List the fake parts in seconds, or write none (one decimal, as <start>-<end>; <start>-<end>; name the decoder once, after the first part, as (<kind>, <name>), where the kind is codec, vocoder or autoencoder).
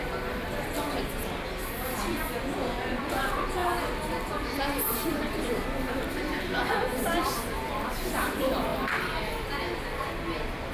none